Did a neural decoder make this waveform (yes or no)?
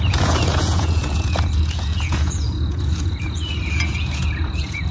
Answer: yes